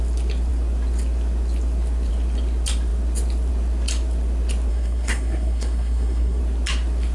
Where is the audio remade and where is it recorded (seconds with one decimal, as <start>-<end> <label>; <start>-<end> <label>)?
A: 0.0-4.7 recorded; 4.7-6.4 remade; 6.4-7.1 recorded